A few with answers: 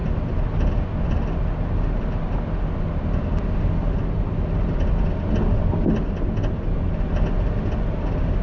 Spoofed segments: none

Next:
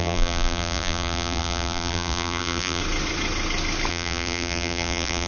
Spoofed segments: 0.0-2.8 (vocoder, BigVGAN v2); 3.9-5.3

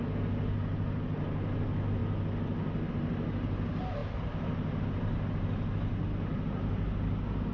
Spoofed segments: none